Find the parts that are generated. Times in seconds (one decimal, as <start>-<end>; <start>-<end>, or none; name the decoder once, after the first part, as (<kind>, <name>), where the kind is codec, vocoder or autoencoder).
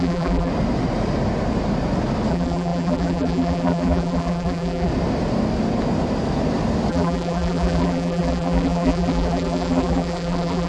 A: 0.0-0.5 (vocoder, BigVGAN v2); 2.3-4.9; 6.9-10.7